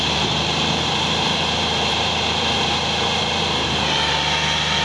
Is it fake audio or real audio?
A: fake